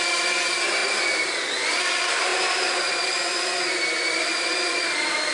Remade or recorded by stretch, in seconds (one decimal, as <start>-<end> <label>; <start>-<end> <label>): 0.0-0.8 recorded; 0.8-1.7 remade; 1.7-2.3 recorded; 2.3-3.5 remade; 3.5-5.3 recorded